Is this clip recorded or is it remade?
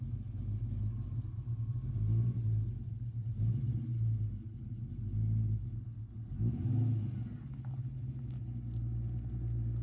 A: recorded